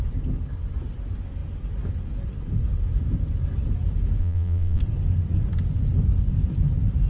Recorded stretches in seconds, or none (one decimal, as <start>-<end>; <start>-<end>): 0.0-4.2; 4.8-7.1